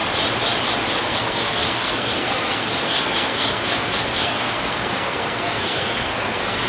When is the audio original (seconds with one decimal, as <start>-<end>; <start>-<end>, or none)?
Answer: 0.0-1.0